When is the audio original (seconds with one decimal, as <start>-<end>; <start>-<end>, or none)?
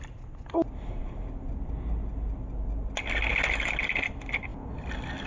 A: 0.0-5.3